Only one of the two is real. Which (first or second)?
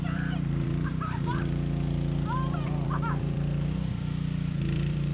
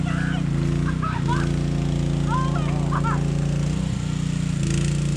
second